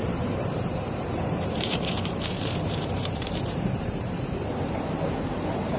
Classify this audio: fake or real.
fake